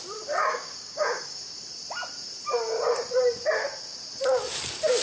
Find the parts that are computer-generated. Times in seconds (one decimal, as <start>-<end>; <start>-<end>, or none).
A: 0.4-1.4